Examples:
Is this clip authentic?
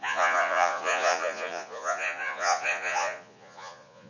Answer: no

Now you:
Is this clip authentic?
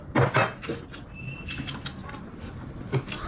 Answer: yes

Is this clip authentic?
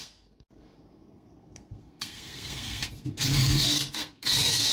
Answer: no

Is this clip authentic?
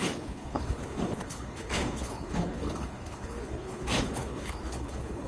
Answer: no